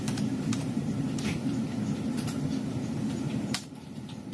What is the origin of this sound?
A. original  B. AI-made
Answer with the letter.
B